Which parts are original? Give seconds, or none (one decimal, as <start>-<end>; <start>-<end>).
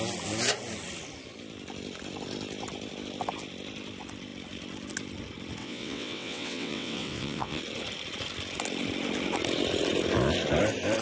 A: 0.0-5.6; 7.6-11.0